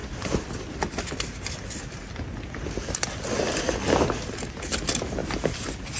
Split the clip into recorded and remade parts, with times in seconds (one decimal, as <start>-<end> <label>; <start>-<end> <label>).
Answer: 0.0-6.0 recorded